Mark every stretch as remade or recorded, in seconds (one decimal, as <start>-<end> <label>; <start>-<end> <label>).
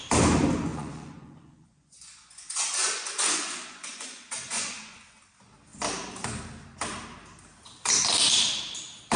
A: 0.0-0.7 recorded; 0.7-5.2 remade; 5.2-9.2 recorded